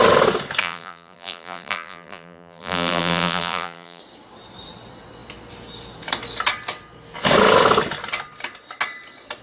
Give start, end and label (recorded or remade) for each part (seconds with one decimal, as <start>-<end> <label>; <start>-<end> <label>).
0.0-0.6 recorded; 0.6-4.0 remade; 4.0-9.4 recorded